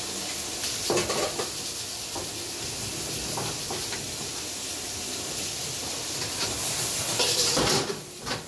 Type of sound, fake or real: real